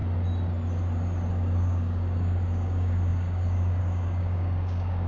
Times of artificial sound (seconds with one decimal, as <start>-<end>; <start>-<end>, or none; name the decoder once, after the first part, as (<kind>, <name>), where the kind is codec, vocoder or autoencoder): 1.3-5.1 (codec, DAC)